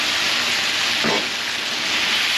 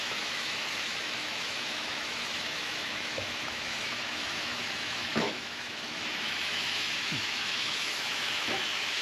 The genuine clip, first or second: first